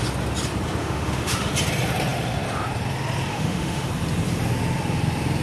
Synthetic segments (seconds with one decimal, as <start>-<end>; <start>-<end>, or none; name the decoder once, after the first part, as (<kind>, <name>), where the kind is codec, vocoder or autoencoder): 0.8-1.5 (autoencoder, DAC-VAE); 3.3-3.9

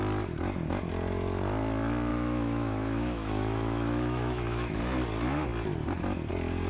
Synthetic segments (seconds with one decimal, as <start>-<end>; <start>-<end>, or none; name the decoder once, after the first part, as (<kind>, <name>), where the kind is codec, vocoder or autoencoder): 2.1-4.8 (autoencoder, DAC-VAE)

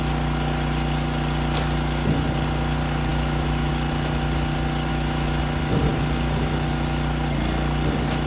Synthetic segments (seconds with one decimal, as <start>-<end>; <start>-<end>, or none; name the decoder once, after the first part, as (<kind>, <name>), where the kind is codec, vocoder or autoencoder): 3.1-3.7 (autoencoder, DAC-VAE); 4.9-5.4

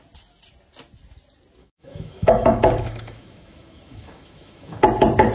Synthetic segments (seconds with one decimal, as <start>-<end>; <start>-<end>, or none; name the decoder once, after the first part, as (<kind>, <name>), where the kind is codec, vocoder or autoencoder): 1.6-4.8 (autoencoder, DAC-VAE)

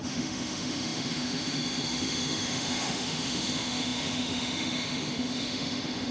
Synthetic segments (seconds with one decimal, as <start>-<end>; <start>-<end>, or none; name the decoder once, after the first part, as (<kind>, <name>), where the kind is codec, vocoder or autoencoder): 0.0-6.1 (autoencoder, DAC-VAE)

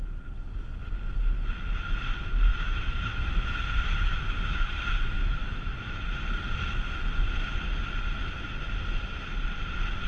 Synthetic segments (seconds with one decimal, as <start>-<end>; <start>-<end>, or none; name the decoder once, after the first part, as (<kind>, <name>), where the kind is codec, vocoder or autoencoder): 2.5-6.0 (autoencoder, DAC-VAE)